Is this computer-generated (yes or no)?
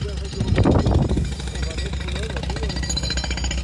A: no